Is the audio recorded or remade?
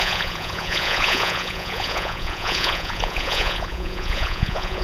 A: remade